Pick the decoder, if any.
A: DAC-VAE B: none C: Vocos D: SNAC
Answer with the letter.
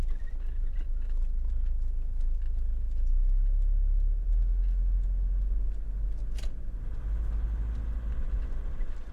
B